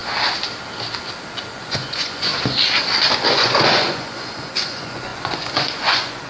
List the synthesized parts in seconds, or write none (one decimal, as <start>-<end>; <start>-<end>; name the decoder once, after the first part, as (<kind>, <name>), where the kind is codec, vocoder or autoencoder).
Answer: 1.5-2.3 (vocoder, Vocos); 3.3-6.3